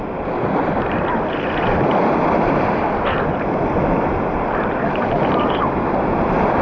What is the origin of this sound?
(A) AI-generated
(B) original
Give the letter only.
B